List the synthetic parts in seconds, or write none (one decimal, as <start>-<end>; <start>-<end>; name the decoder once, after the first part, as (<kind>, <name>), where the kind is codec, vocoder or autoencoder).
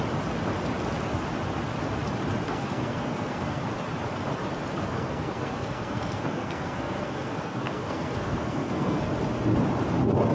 2.5-3.6 (codec, SNAC); 4.8-9.1